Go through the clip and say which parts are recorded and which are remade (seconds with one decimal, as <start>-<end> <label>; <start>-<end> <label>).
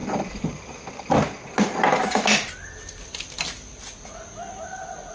0.0-5.1 recorded